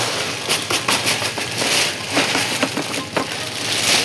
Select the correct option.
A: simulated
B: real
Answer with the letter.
B